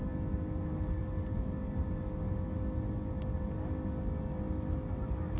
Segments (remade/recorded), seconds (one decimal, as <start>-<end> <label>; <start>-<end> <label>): 0.0-5.4 recorded